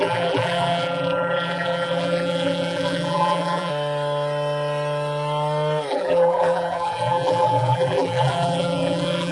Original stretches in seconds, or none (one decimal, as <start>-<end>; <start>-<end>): 3.7-5.9